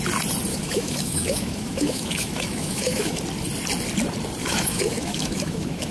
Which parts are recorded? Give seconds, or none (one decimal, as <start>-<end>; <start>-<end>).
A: 0.0-0.5; 3.2-4.4